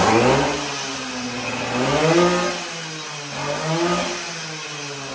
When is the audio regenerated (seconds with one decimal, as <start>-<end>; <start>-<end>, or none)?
none